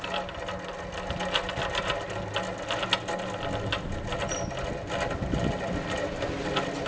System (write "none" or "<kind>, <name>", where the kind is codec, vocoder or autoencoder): none